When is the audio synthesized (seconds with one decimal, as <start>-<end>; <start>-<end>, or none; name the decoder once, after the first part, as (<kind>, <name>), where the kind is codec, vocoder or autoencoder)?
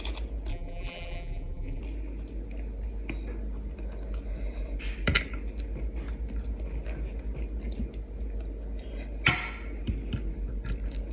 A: 0.5-1.8 (vocoder, BigVGAN v2)